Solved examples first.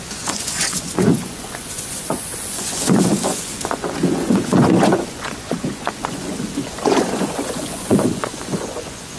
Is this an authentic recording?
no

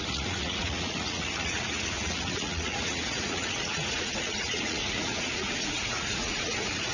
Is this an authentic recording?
no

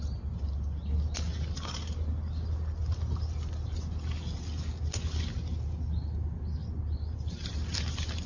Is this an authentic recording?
yes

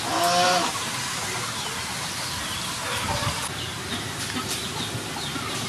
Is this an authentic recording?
yes